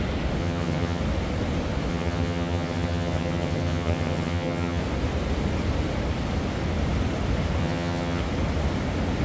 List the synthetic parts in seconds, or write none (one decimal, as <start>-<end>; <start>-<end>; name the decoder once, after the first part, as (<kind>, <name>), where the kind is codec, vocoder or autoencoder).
0.4-1.0 (vocoder, HiFi-GAN); 1.9-4.8; 7.6-8.2